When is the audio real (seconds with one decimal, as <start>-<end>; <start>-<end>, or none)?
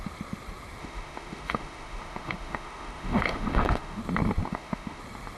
0.0-0.8; 4.0-4.4; 5.0-5.4